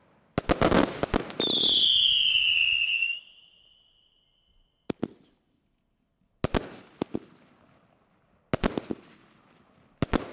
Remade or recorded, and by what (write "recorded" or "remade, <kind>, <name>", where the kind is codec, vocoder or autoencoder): recorded